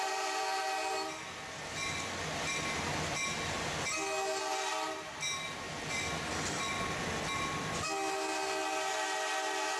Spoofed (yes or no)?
no